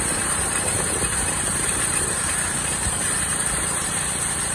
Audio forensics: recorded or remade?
remade